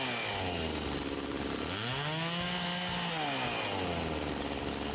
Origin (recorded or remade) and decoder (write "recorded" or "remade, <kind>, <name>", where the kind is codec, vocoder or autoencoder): recorded